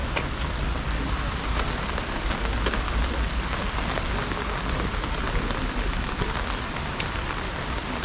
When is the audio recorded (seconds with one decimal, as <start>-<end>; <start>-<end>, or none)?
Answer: 0.0-8.0